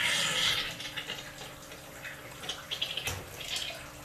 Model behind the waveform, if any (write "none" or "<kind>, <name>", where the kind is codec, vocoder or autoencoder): none